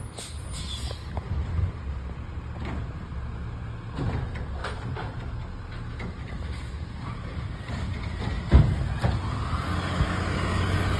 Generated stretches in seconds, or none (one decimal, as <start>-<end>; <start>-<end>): 4.6-5.3; 6.2-8.2